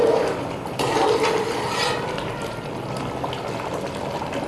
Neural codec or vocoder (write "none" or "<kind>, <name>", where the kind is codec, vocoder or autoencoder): none